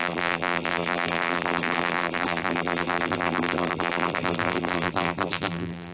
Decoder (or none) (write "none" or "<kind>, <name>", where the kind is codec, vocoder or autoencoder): vocoder, BigVGAN v2